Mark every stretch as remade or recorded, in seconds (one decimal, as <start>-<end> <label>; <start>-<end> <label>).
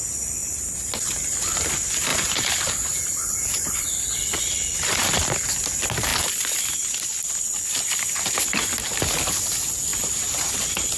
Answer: 0.0-0.4 recorded; 0.4-0.9 remade; 0.9-2.1 recorded; 2.1-3.7 remade; 3.7-9.9 recorded; 9.9-10.5 remade; 10.5-11.0 recorded